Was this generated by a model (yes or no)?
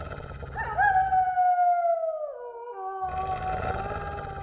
no